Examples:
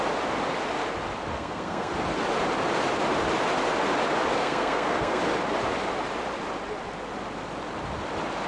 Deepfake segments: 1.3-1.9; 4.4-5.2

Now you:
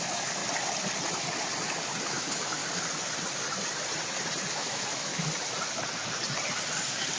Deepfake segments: 0.0-0.4; 2.1-2.6; 4.5-5.1

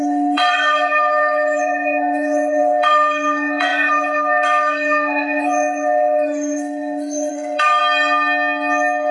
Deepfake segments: 0.0-7.8

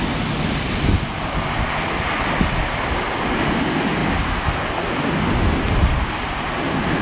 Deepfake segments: none